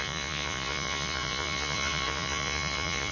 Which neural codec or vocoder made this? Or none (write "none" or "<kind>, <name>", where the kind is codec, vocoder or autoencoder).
vocoder, Vocos